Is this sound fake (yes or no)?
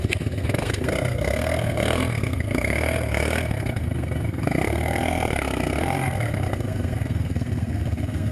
yes